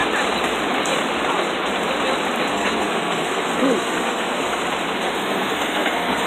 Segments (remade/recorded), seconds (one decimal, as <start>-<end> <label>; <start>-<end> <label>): 0.0-2.5 recorded; 2.5-4.6 remade; 4.6-5.0 recorded; 5.0-6.3 remade